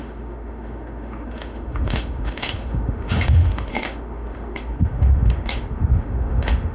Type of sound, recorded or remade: remade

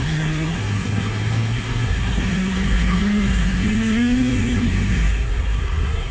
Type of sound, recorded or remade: remade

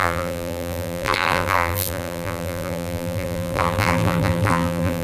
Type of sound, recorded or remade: remade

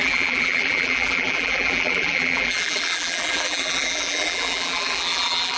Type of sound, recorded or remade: remade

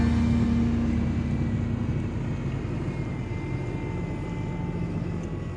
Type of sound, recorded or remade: recorded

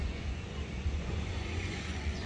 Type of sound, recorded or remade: remade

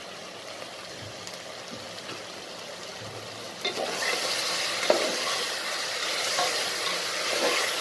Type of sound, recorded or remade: recorded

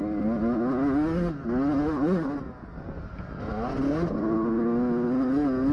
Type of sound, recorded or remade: recorded